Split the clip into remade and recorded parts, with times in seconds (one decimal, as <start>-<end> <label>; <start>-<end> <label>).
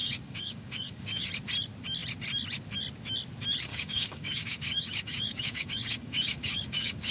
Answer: 0.0-1.3 remade; 1.3-3.7 recorded; 3.7-7.1 remade